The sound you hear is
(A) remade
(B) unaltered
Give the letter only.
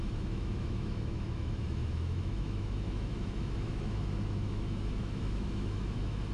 A